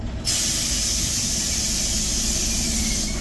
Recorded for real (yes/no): yes